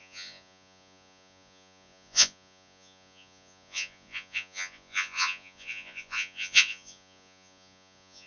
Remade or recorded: remade